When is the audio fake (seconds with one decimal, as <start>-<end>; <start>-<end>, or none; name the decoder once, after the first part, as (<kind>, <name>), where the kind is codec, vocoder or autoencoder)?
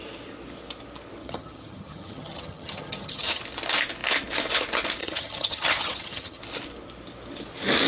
1.2-3.4 (vocoder, HiFi-GAN); 5.0-6.4